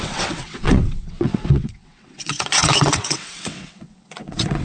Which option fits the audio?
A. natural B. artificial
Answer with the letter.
B